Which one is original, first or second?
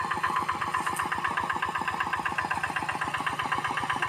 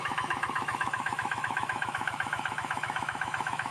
first